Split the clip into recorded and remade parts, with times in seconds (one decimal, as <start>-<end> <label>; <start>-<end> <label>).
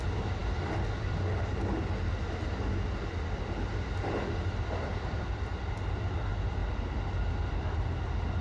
0.0-8.4 recorded